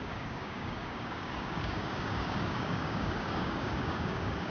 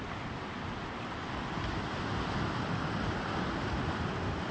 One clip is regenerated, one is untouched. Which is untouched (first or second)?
second